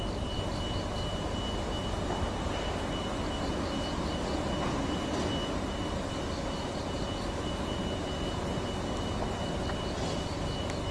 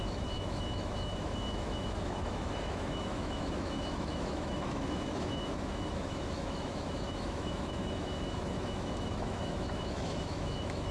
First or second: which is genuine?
first